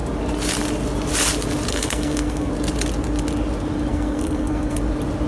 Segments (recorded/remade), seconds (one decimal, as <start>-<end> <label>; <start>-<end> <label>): 0.0-1.7 recorded; 1.7-2.5 remade; 2.5-3.9 recorded; 3.9-4.8 remade; 4.8-5.3 recorded